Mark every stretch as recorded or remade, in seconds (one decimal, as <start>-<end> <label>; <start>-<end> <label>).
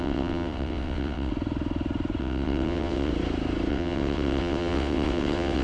0.0-1.3 remade; 1.3-2.2 recorded; 2.2-3.1 remade; 3.1-3.7 recorded; 3.7-5.6 remade